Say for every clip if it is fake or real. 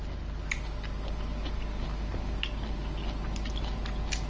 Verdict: real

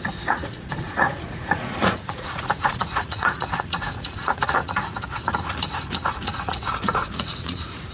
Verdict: fake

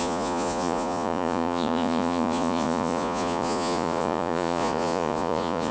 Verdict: fake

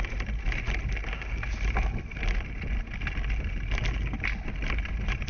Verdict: real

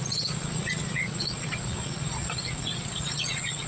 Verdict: fake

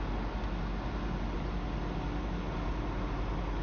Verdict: real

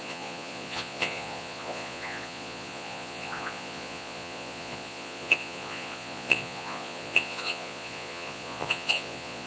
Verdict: fake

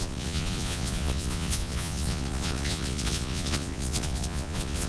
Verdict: fake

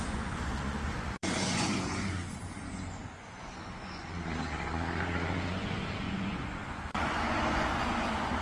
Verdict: fake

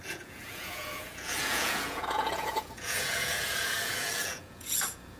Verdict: fake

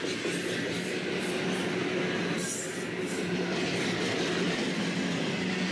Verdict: real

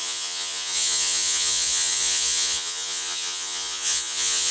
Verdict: fake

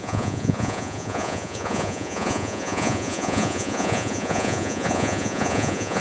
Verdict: fake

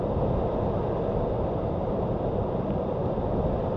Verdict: real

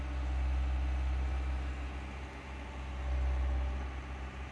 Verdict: real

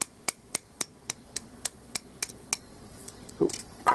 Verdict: fake